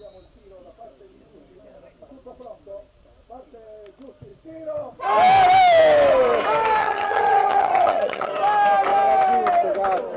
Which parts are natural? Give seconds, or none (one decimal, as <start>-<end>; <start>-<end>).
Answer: 0.0-6.8; 8.3-10.2